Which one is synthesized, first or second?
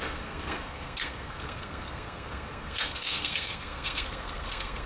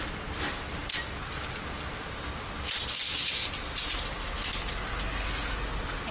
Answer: first